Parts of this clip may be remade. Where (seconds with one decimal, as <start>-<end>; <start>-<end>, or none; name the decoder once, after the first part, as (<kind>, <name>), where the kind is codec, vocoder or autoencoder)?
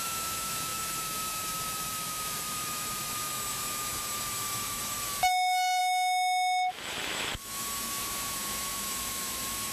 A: 0.0-5.8 (autoencoder, DAC-VAE); 6.7-9.7